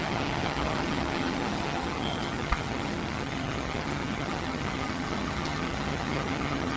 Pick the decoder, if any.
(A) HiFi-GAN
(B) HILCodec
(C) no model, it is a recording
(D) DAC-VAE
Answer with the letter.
A